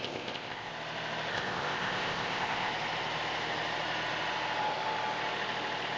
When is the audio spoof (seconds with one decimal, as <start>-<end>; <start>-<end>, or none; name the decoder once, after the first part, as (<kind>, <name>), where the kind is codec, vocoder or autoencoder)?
0.0-0.7 (codec, ZipCodec); 1.3-2.7